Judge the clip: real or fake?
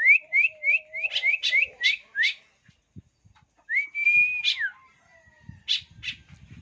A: real